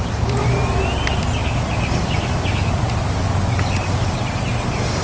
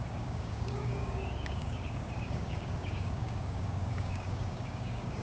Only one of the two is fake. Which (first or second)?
second